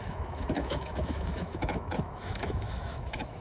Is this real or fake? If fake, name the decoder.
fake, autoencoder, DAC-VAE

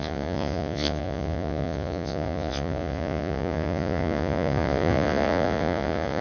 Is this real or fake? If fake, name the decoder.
fake, vocoder, Vocos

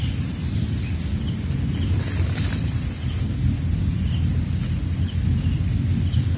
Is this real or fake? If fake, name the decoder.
real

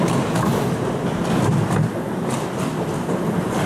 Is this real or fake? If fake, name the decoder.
real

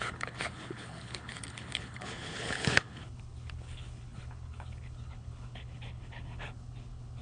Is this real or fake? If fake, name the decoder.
fake, codec, HILCodec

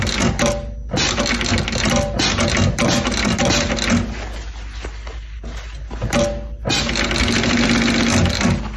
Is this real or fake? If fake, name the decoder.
real